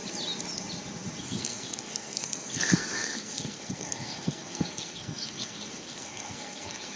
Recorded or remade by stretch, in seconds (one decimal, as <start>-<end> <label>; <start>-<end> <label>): 0.0-1.2 recorded; 1.2-7.0 remade

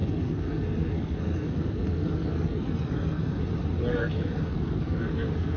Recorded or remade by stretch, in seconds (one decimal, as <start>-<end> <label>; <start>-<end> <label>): 0.0-3.4 remade; 3.4-3.9 recorded; 3.9-5.6 remade

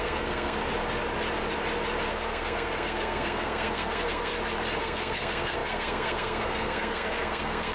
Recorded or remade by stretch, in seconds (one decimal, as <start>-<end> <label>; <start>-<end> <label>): 0.0-0.7 remade; 0.7-2.1 recorded; 2.1-4.3 remade; 4.3-4.8 recorded; 4.8-7.7 remade

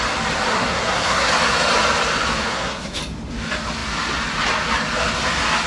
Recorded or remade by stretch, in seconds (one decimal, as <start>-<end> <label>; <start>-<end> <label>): 0.0-0.5 recorded; 0.5-1.3 remade; 1.3-2.4 recorded; 2.4-3.0 remade; 3.0-5.7 recorded

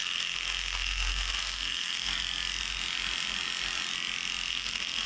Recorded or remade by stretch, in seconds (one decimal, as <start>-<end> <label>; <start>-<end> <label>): 0.0-2.1 remade; 2.1-4.5 recorded; 4.5-5.1 remade

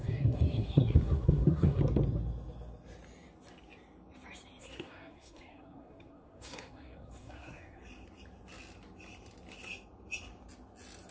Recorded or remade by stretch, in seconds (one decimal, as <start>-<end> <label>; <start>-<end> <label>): 0.0-1.8 remade; 1.8-4.6 recorded; 4.6-7.8 remade; 7.8-11.1 recorded

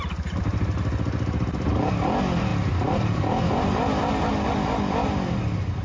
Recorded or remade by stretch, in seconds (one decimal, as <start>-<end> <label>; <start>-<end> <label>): 0.0-5.8 recorded

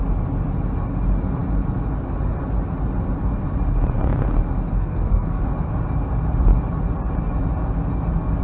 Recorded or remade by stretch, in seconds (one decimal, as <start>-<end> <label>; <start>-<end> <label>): 0.0-4.7 recorded; 4.7-5.4 remade; 5.4-8.4 recorded